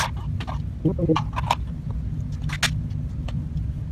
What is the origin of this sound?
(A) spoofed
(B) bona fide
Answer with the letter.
B